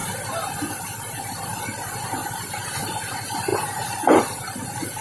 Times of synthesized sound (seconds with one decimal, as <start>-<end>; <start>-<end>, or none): 3.5-4.2